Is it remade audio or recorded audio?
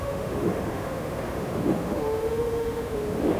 remade